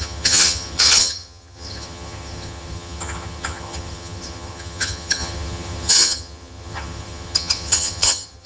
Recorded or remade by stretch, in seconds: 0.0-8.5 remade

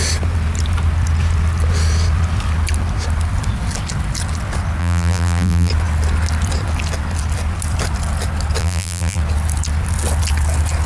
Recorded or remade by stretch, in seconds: 0.0-4.8 recorded; 4.8-5.7 remade; 5.7-8.6 recorded; 8.6-9.2 remade; 9.2-10.9 recorded

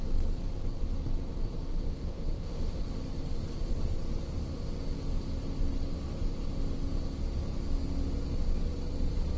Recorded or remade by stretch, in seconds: 0.0-1.7 recorded; 1.7-2.8 remade; 2.8-9.4 recorded